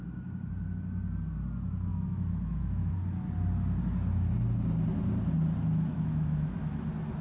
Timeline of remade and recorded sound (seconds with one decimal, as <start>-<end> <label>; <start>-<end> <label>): 0.0-1.9 recorded; 1.9-2.9 remade; 2.9-5.9 recorded; 5.9-6.7 remade; 6.7-7.2 recorded